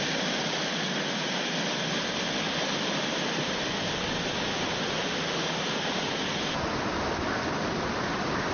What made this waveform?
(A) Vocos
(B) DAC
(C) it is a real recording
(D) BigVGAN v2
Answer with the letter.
C